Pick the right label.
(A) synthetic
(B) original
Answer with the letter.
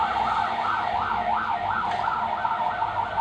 B